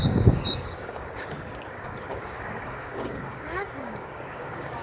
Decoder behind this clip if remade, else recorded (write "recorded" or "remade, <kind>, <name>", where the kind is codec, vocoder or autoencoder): remade, codec, DAC